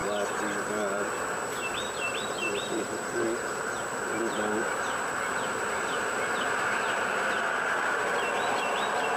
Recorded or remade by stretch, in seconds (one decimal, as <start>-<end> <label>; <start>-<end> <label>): 0.0-9.2 remade